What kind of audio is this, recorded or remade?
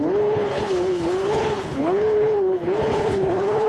remade